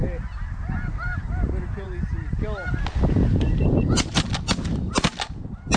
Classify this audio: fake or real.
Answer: real